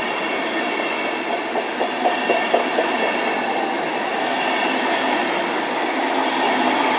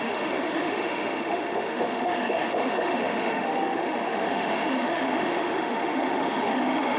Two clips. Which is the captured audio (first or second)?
first